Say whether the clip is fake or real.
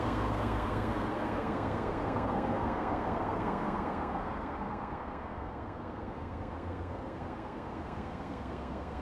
fake